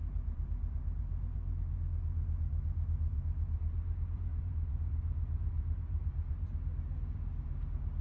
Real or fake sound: fake